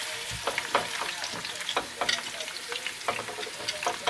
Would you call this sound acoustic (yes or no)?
yes